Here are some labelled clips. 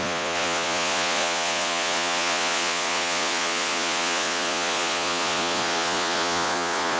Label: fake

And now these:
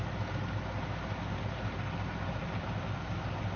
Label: real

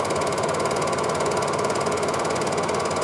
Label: fake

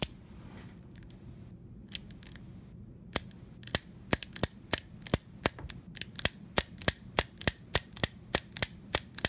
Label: real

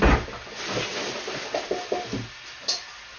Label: real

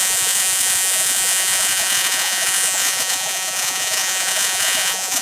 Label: fake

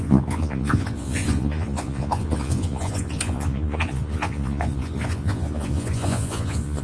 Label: fake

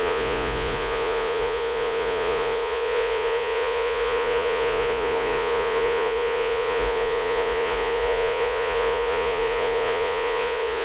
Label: fake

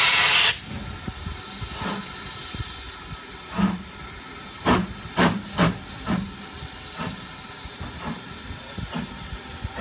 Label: real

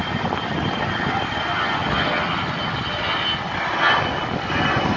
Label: real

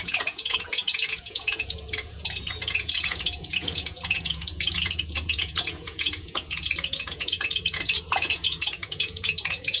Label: fake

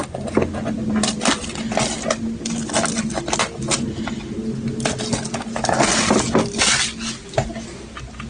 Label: real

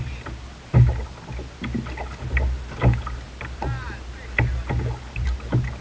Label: real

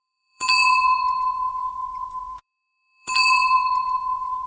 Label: fake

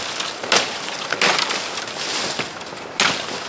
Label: real